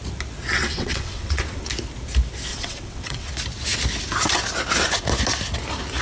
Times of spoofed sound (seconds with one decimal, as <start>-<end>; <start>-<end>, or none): 0.6-1.7; 2.5-3.3